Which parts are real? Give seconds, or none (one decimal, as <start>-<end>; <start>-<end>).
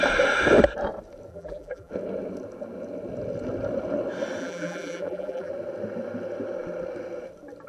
0.0-1.3; 1.9-4.4; 5.5-7.7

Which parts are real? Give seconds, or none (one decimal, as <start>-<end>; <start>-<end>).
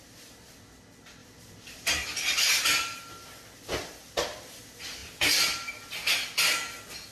0.0-1.2; 1.9-2.3; 4.6-7.1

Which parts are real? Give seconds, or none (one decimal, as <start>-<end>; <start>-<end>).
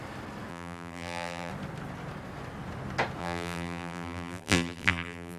0.0-0.5; 1.5-3.2